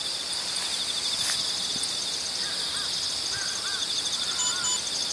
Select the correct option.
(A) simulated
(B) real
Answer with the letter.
B